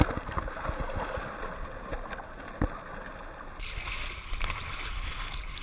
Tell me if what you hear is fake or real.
real